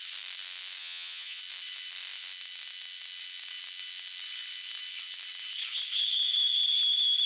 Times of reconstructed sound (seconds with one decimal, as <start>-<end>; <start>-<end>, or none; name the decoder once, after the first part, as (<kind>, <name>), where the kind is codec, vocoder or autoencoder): 0.8-1.4 (vocoder, HiFi-GAN)